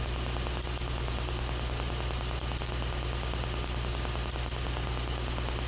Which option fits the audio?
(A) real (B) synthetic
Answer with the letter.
A